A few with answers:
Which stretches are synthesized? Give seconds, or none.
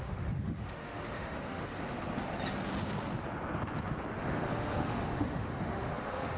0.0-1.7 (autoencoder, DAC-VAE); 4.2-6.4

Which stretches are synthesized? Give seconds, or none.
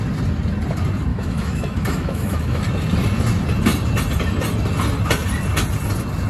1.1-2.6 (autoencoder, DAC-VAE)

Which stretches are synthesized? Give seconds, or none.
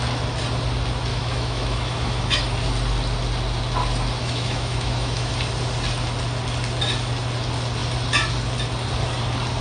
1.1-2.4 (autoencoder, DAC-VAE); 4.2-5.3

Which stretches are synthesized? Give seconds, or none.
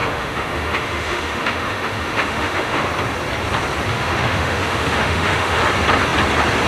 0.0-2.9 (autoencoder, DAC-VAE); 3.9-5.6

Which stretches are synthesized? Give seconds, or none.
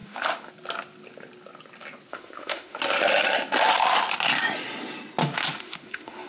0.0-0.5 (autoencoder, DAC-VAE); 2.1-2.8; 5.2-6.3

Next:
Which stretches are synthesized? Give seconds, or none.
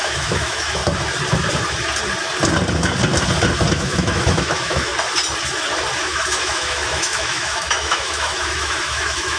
0.0-0.8 (autoencoder, DAC-VAE); 3.7-4.9; 6.0-9.4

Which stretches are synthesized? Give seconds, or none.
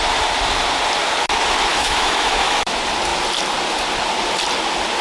1.7-2.7 (autoencoder, DAC-VAE)